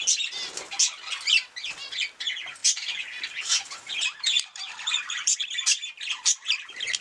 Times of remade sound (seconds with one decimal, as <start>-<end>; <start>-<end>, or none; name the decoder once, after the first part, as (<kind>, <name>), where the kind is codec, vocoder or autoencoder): 2.6-5.4 (vocoder, BigVGAN v2)